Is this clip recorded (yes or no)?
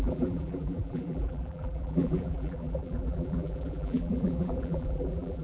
no